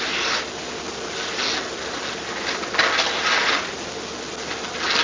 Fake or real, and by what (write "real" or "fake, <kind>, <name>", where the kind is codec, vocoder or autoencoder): real